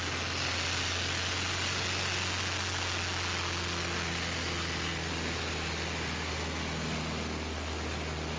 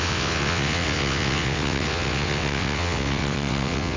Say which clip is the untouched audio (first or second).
first